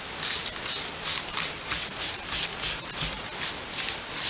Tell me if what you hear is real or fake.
real